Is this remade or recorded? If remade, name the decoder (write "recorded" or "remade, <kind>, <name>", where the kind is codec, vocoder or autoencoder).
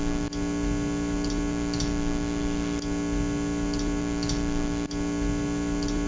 recorded